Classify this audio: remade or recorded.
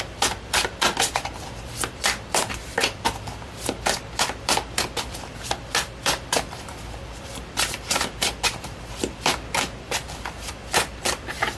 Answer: remade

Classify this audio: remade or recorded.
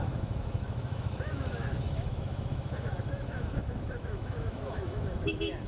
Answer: remade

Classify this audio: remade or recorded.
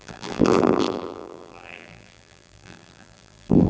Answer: remade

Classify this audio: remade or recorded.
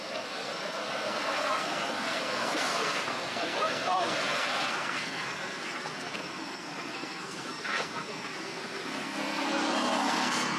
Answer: remade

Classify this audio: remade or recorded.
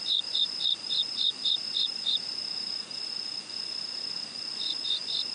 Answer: remade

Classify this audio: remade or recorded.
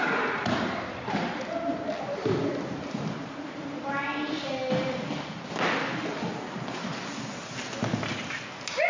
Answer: recorded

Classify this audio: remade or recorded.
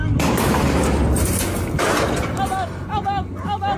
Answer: recorded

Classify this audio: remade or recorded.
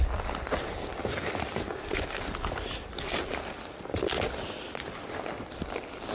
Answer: recorded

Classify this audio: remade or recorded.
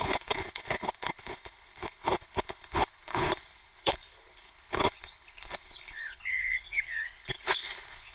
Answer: remade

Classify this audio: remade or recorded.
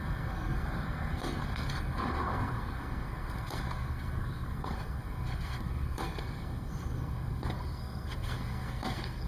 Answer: remade